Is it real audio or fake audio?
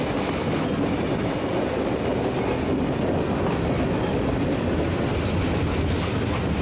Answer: real